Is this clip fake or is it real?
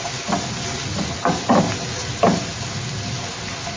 real